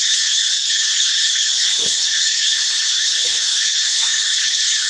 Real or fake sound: fake